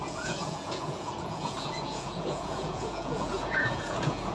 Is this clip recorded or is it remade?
remade